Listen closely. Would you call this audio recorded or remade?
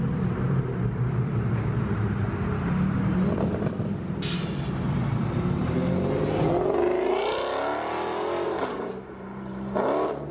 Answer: recorded